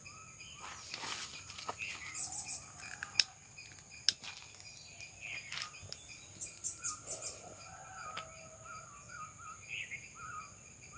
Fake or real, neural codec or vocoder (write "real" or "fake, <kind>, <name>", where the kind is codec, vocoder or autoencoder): real